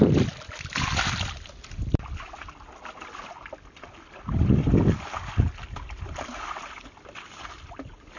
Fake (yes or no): no